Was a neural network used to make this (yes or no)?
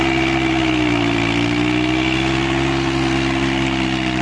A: no